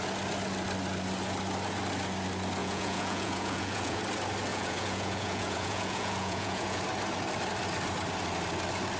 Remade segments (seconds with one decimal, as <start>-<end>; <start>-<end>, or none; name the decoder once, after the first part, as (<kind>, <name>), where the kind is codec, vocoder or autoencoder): 2.6-4.0 (vocoder, Vocos); 4.5-6.8